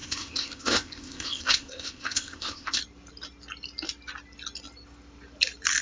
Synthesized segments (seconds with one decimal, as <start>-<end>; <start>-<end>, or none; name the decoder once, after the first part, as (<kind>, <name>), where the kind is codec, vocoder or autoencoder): 0.0-2.8 (codec, ZipCodec)